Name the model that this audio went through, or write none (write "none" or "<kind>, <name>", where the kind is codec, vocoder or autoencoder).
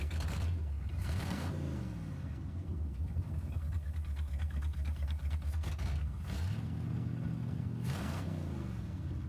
codec, SNAC